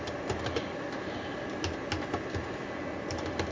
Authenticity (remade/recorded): recorded